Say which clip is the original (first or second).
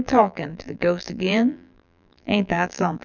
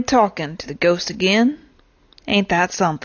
second